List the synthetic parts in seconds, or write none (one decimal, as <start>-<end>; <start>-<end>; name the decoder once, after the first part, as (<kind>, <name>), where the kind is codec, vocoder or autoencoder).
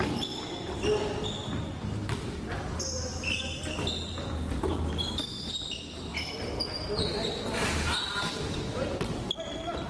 none